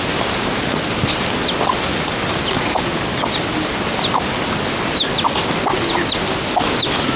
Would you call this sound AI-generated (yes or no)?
no